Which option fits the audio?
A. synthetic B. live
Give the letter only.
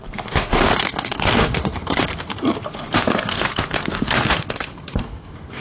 A